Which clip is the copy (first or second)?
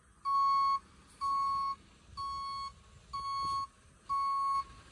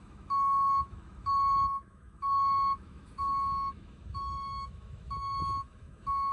second